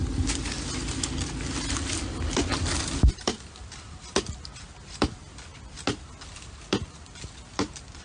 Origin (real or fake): real